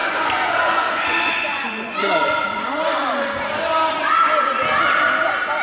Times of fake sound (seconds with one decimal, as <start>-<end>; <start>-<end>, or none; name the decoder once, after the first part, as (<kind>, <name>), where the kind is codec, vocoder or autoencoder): 0.0-3.4 (vocoder, Vocos)